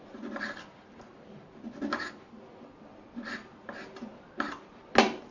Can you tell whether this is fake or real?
real